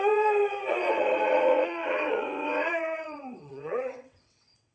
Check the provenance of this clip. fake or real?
fake